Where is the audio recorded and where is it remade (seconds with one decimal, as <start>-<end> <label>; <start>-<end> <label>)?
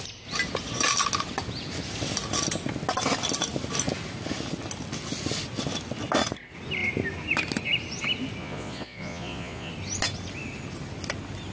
0.0-8.4 recorded; 8.4-9.7 remade; 9.7-11.5 recorded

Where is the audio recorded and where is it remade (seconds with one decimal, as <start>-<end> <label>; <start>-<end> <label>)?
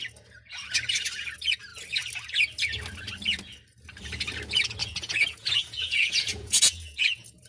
0.0-4.8 recorded; 4.8-7.5 remade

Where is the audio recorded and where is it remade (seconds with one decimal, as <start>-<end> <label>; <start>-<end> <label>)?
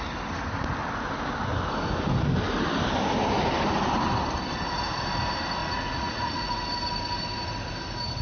0.0-5.6 recorded; 5.6-6.6 remade; 6.6-8.2 recorded